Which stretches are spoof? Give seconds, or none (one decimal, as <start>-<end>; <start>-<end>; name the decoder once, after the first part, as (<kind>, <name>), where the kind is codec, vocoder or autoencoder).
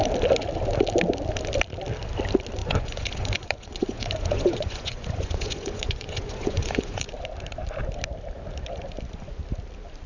2.6-7.1 (vocoder, Vocos)